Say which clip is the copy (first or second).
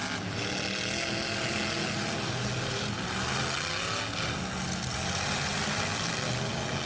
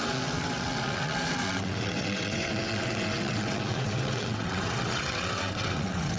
second